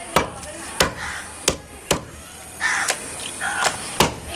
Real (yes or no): yes